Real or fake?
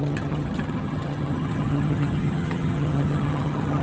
fake